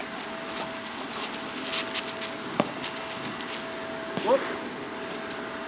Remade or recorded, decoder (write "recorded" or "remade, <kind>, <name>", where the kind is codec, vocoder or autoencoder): recorded